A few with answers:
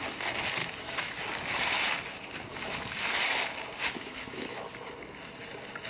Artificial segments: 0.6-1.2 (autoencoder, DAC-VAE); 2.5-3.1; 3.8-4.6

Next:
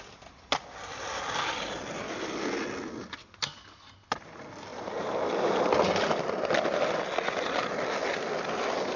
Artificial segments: none

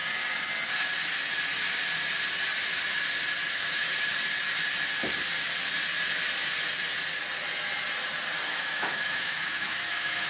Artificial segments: 3.5-3.9 (autoencoder, DAC-VAE); 8.5-10.3

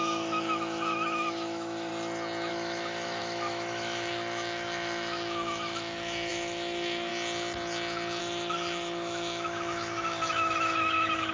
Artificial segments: 0.0-1.9 (autoencoder, DAC-VAE); 2.5-7.1; 8.2-11.3

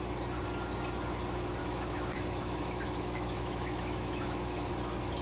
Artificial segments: 1.6-4.7 (autoencoder, DAC-VAE)

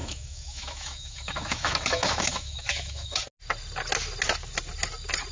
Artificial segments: 0.0-3.2 (autoencoder, DAC-VAE)

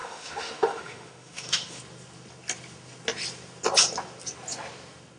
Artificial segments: 0.0-1.8 (autoencoder, DAC-VAE)

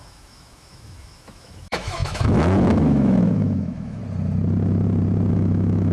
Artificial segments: 0.0-4.0 (autoencoder, DAC-VAE); 5.3-5.9